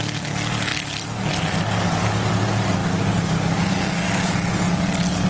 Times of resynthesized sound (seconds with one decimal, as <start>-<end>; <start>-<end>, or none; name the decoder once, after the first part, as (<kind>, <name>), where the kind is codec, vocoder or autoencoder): none